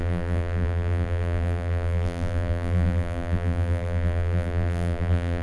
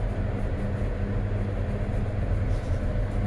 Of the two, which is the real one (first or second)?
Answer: second